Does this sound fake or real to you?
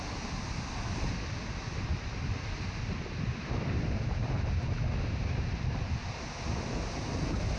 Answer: real